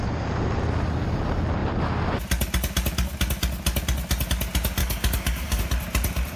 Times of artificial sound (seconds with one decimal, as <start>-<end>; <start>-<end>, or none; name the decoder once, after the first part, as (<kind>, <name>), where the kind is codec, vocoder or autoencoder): 4.8-5.6 (codec, DAC)